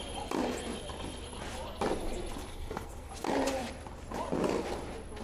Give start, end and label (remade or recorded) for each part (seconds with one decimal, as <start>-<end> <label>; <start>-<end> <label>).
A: 0.0-2.5 recorded; 2.5-3.1 remade; 3.1-5.2 recorded